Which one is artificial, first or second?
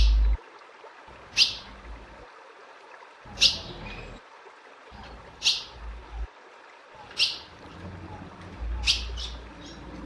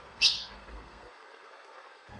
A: second